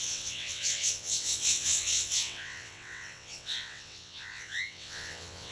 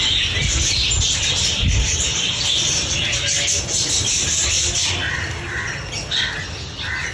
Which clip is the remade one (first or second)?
first